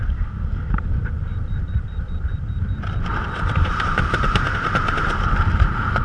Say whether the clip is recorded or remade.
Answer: remade